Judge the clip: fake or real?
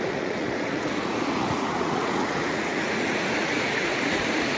fake